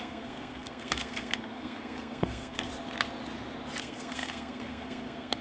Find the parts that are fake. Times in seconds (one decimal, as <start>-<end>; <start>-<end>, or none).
0.0-2.7; 3.8-5.4